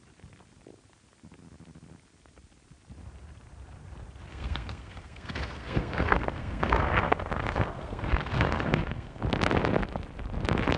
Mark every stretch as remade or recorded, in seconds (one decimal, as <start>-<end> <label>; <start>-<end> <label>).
0.0-4.3 recorded; 4.3-9.2 remade; 9.2-10.8 recorded